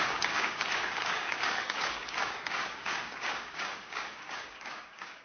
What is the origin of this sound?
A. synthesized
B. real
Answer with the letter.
A